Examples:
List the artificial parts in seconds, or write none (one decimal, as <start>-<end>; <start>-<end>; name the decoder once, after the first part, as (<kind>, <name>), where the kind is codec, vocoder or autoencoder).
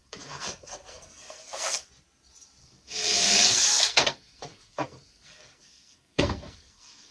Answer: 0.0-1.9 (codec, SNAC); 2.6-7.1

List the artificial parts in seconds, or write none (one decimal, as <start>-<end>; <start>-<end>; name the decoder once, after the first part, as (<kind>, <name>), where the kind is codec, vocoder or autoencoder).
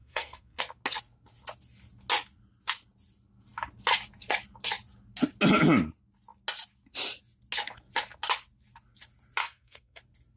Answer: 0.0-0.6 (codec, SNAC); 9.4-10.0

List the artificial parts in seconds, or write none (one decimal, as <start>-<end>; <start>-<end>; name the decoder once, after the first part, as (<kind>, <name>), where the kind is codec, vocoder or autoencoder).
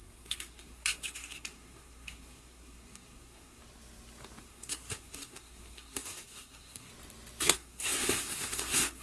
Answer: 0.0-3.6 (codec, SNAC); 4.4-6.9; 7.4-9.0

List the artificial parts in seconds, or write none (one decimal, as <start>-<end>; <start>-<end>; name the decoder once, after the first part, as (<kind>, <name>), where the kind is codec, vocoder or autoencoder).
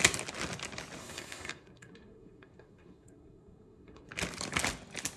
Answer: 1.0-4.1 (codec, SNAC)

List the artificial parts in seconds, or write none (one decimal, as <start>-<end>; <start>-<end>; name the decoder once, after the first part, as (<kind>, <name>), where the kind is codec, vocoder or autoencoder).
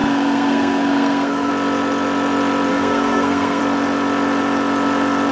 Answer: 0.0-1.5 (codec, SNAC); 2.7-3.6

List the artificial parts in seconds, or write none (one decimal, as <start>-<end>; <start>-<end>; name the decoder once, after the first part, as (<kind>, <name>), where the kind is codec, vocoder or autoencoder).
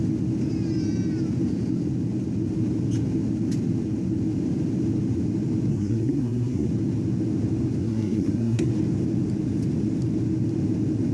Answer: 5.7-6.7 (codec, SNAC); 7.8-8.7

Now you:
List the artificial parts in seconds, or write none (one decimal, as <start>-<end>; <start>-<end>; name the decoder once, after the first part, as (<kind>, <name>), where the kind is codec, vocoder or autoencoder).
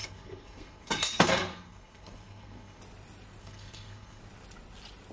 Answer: 0.0-2.8 (codec, SNAC); 3.4-4.2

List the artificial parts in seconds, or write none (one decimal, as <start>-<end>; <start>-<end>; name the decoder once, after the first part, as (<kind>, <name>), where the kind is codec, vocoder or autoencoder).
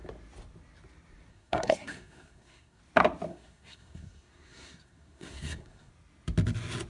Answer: 1.3-2.8 (codec, SNAC); 3.3-5.9